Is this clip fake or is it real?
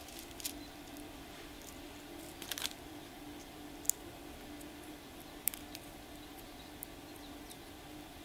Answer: fake